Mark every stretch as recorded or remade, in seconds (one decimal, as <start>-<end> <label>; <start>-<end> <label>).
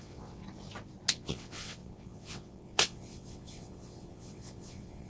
0.0-0.4 remade; 0.4-1.1 recorded; 1.1-5.1 remade